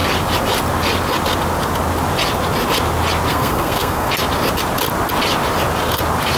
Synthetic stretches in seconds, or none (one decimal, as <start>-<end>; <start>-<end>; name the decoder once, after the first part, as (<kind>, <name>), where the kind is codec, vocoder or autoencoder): 3.3-4.1 (codec, SNAC)